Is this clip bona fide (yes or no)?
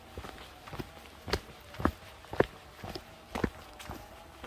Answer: yes